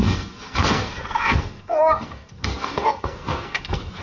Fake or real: fake